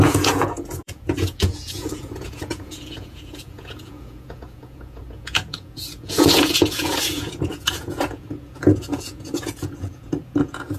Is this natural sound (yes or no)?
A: no